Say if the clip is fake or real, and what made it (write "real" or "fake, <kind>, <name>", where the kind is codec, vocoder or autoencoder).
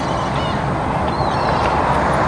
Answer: fake, vocoder, BigVGAN v2